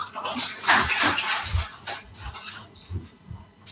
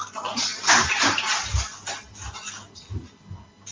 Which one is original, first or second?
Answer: second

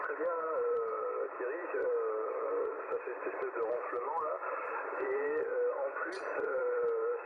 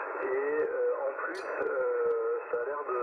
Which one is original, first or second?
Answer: second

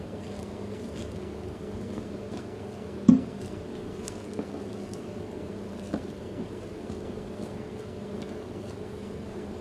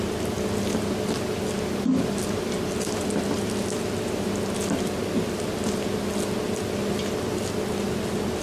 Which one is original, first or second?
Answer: second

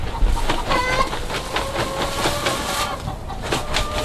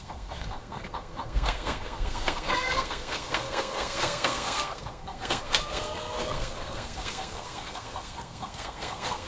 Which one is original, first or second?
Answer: first